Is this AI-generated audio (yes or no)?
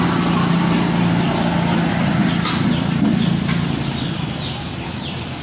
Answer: no